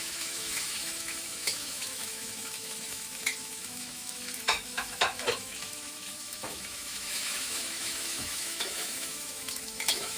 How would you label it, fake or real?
fake